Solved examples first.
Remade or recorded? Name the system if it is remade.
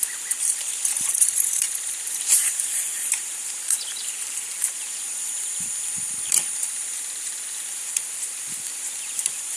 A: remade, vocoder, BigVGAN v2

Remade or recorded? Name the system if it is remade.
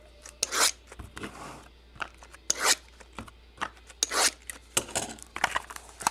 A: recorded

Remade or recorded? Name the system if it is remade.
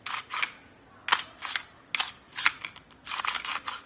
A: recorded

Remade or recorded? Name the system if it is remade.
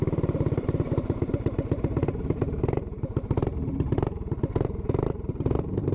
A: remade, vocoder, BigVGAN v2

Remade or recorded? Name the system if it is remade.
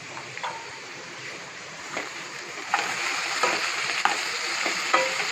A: remade, vocoder, BigVGAN v2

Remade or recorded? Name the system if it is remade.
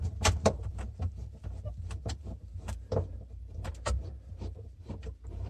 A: remade, vocoder, BigVGAN v2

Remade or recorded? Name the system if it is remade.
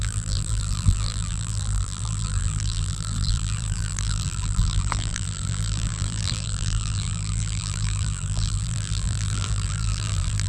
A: remade, vocoder, BigVGAN v2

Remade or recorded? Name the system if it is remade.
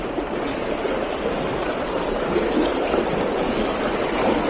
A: recorded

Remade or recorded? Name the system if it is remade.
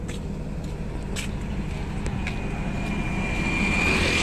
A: recorded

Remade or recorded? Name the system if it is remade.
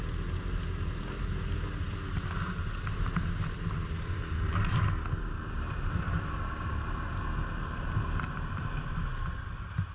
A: recorded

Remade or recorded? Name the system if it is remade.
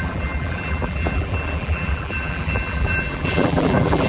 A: remade, vocoder, BigVGAN v2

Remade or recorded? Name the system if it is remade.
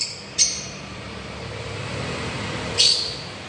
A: remade, vocoder, BigVGAN v2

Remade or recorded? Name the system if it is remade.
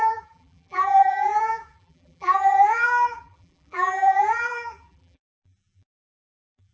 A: remade, vocoder, BigVGAN v2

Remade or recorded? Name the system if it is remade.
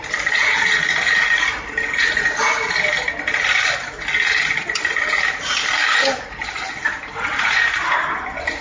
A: recorded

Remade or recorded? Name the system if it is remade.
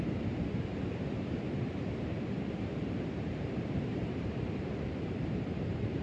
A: remade, vocoder, BigVGAN v2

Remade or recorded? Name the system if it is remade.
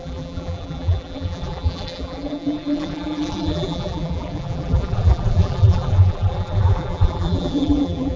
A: remade, vocoder, BigVGAN v2